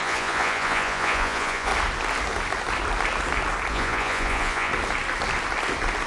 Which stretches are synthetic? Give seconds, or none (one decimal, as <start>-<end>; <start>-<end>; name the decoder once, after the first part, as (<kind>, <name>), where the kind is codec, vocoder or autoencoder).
0.0-1.7 (vocoder, Vocos); 3.7-4.7

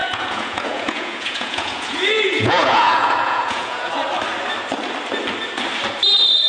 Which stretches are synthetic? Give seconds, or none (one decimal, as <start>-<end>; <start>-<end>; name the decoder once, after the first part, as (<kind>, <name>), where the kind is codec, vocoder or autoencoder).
0.0-3.9 (vocoder, Vocos)

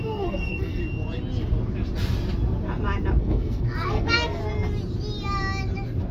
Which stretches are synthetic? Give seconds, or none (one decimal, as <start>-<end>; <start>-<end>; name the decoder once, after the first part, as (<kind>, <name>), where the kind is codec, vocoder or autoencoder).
0.0-0.8 (codec, SNAC); 3.2-4.4